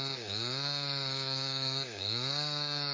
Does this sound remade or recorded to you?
remade